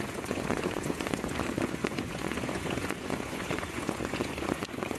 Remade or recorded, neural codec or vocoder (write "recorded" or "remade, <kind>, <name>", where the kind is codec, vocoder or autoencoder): remade, vocoder, Vocos